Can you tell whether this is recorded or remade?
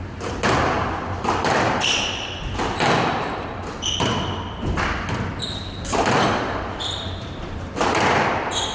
remade